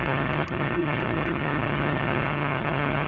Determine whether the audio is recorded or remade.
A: remade